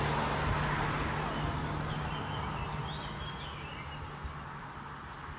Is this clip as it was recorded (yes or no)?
yes